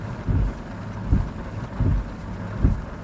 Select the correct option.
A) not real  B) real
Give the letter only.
B